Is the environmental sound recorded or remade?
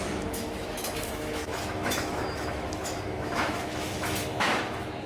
remade